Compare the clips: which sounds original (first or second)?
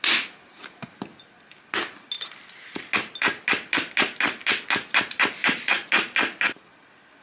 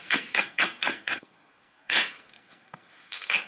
first